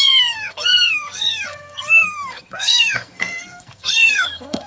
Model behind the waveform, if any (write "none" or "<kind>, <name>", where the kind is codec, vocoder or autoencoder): codec, SNAC